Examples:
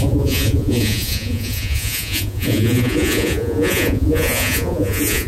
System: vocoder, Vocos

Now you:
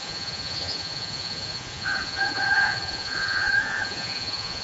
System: vocoder, Vocos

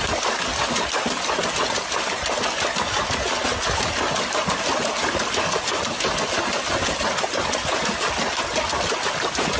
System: none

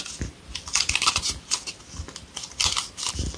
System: none